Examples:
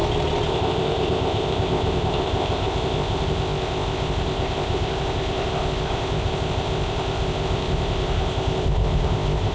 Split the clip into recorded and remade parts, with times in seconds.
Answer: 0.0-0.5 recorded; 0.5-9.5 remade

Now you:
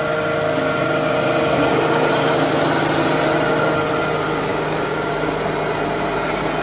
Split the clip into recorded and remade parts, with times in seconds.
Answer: 0.0-4.5 recorded; 4.5-5.1 remade; 5.1-6.6 recorded

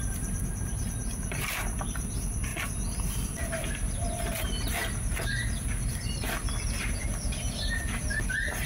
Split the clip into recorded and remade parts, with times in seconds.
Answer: 0.0-2.5 recorded; 2.5-3.4 remade; 3.4-8.7 recorded

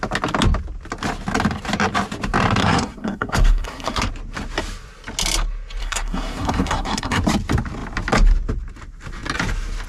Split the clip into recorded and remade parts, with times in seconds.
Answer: 0.0-2.6 recorded; 2.6-4.1 remade; 4.1-5.8 recorded; 5.8-7.2 remade; 7.2-9.9 recorded

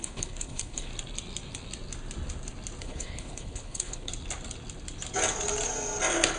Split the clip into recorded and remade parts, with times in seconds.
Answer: 0.0-0.9 remade; 0.9-2.8 recorded; 2.8-4.1 remade; 4.1-6.4 recorded

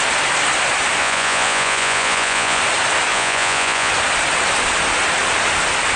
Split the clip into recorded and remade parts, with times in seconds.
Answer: 0.0-1.0 recorded; 1.0-2.6 remade; 2.6-3.1 recorded; 3.1-3.9 remade; 3.9-6.0 recorded